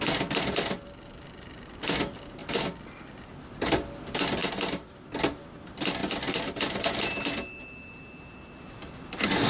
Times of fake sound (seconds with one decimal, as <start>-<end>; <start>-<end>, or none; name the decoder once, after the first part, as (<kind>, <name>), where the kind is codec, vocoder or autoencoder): 4.4-5.1 (vocoder, BigVGAN v2)